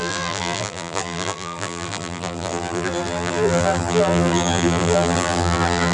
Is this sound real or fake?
fake